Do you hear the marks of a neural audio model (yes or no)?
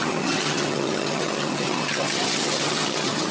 yes